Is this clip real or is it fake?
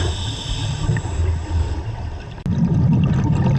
real